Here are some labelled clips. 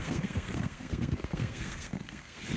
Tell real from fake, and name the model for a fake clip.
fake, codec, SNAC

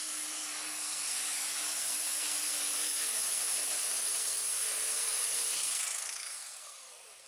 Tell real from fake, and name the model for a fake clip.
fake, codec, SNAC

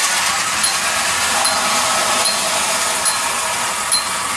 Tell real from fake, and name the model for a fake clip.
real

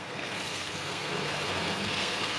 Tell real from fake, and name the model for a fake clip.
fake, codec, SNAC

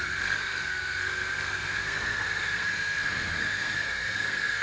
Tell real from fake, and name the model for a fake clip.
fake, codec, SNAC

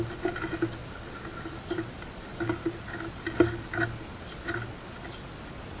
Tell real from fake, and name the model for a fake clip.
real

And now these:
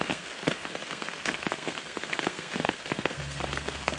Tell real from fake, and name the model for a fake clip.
fake, codec, SNAC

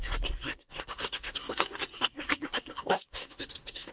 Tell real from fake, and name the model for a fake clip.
fake, codec, SNAC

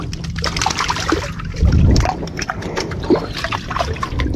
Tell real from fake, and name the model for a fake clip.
real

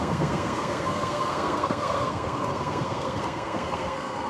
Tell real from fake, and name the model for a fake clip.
fake, codec, SNAC